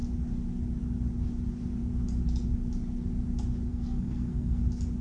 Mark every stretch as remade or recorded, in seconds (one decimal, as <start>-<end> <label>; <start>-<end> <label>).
0.0-3.7 recorded; 3.7-4.6 remade; 4.6-5.0 recorded